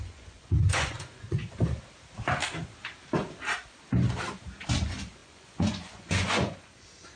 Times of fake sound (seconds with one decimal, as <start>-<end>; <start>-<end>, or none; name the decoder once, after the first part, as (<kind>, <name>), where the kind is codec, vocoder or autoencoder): 0.0-1.4 (vocoder, Vocos); 4.8-7.2